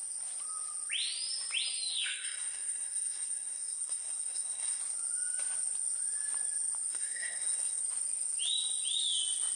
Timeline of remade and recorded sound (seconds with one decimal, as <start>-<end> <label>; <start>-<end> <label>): 0.0-1.9 recorded; 1.9-4.8 remade; 4.8-6.9 recorded; 6.9-7.8 remade; 7.8-9.6 recorded

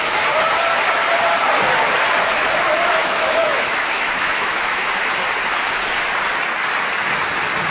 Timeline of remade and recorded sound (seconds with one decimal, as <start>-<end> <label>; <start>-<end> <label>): 0.0-3.0 recorded; 3.0-5.1 remade; 5.1-7.7 recorded

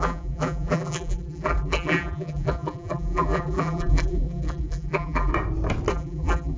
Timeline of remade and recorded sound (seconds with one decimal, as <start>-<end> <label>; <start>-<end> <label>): 0.0-5.3 remade; 5.3-5.9 recorded; 5.9-6.6 remade

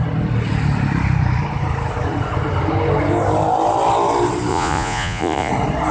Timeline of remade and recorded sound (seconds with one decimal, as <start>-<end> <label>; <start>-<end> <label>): 0.0-4.5 recorded; 4.5-5.5 remade; 5.5-5.9 recorded

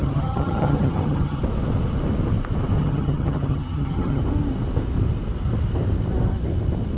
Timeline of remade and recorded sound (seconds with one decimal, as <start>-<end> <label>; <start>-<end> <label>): 0.0-1.4 remade; 1.4-2.8 recorded; 2.8-4.2 remade; 4.2-7.0 recorded

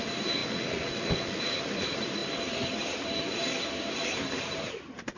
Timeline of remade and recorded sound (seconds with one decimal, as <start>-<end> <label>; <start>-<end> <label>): 0.0-0.4 remade; 0.4-1.4 recorded; 1.4-5.2 remade

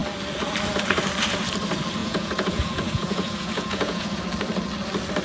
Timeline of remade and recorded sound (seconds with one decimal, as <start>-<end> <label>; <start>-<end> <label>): 0.0-2.0 recorded; 2.0-4.2 remade; 4.2-5.2 recorded

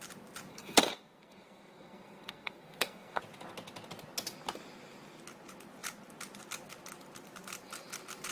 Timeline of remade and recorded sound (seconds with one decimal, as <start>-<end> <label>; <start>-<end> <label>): 0.0-0.5 recorded; 0.5-3.2 remade; 3.2-8.3 recorded